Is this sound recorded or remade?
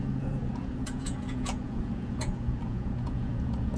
remade